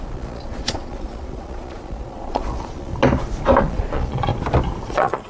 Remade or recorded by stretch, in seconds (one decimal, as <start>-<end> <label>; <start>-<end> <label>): 0.0-2.9 remade; 2.9-3.6 recorded; 3.6-4.3 remade; 4.3-4.8 recorded; 4.8-5.3 remade

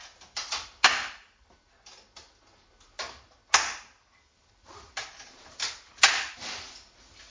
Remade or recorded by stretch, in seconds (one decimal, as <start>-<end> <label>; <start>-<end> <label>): 0.0-7.3 recorded

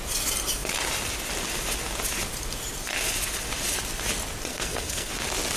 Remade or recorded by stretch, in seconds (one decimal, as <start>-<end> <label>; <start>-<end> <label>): 0.0-4.5 recorded; 4.5-5.1 remade; 5.1-5.6 recorded

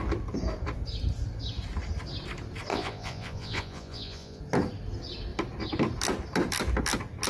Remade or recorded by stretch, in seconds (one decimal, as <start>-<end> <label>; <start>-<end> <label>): 0.0-2.7 recorded; 2.7-4.4 remade; 4.4-7.3 recorded

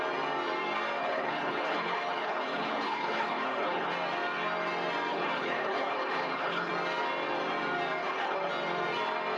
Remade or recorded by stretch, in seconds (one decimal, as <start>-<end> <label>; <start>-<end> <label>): 0.0-1.0 recorded; 1.0-3.9 remade; 3.9-5.1 recorded; 5.1-6.7 remade; 6.7-8.0 recorded; 8.0-8.5 remade; 8.5-9.4 recorded

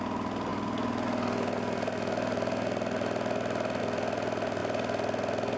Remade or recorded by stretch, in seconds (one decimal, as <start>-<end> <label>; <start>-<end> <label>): 0.0-5.6 recorded